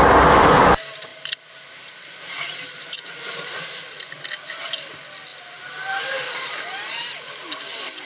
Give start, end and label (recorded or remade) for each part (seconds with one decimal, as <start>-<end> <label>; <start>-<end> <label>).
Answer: 0.0-1.1 recorded; 1.1-3.6 remade; 3.6-5.3 recorded; 5.3-6.1 remade; 6.1-8.1 recorded